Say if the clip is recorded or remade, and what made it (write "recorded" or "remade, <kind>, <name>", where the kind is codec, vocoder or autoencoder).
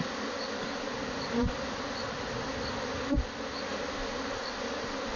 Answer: recorded